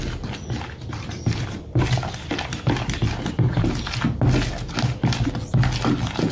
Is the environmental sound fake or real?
real